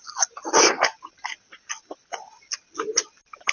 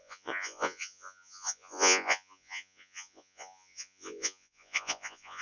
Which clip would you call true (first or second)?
first